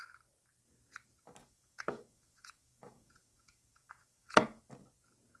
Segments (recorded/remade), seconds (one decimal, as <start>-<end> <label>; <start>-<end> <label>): 0.0-1.4 recorded; 1.4-4.6 remade; 4.6-5.4 recorded